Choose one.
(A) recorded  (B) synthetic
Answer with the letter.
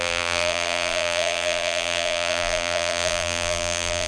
B